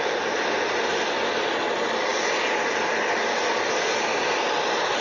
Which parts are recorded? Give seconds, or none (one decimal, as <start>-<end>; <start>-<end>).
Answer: 0.0-5.0